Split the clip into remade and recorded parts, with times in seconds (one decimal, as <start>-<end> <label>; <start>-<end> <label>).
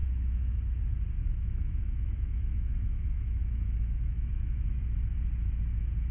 0.0-0.6 remade; 0.6-1.2 recorded; 1.2-4.8 remade; 4.8-6.1 recorded